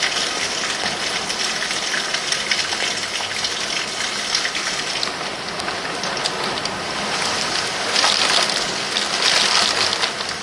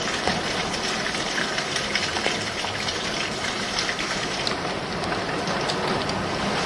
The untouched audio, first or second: first